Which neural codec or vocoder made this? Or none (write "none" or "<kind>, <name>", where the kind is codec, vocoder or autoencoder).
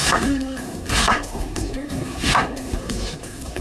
codec, SNAC